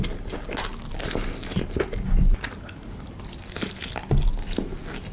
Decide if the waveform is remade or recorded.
recorded